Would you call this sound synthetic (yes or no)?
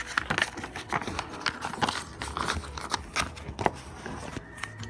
no